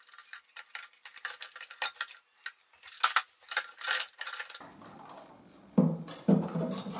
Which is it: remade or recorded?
recorded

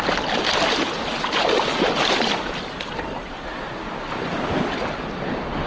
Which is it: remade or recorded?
recorded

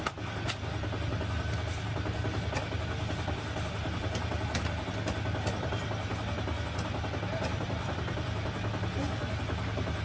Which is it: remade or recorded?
recorded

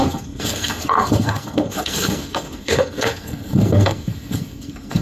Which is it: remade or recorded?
remade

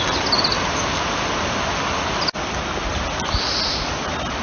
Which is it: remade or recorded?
recorded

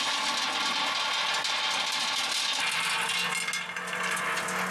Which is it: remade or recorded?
recorded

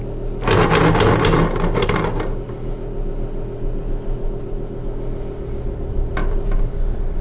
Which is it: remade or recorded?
recorded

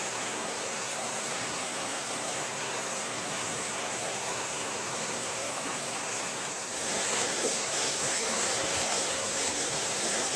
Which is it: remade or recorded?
remade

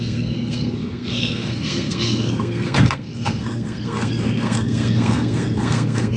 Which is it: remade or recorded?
remade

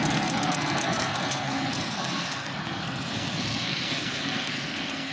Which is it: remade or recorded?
remade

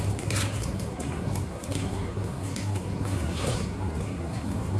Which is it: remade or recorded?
remade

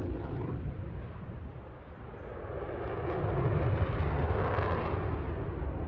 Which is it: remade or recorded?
recorded